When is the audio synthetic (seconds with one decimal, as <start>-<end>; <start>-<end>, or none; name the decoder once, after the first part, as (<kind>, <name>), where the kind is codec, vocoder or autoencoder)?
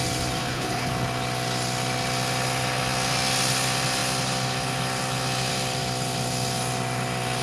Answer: 0.4-0.9 (codec, HILCodec)